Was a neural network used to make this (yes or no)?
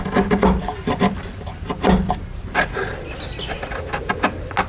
no